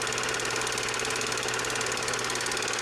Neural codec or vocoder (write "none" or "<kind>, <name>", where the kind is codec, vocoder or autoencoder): none